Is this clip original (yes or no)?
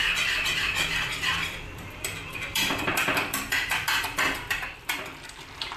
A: no